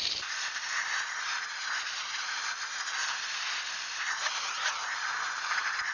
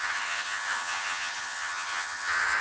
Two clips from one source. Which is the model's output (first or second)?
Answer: second